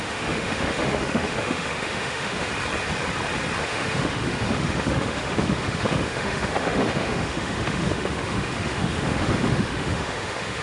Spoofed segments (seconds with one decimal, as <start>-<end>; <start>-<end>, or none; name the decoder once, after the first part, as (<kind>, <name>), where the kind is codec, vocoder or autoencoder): 0.0-2.5 (autoencoder, DAC-VAE); 3.6-10.6